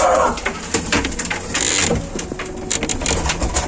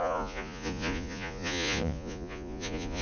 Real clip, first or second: first